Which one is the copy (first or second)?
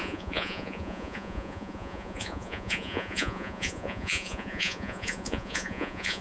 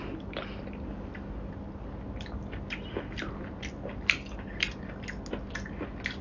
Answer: first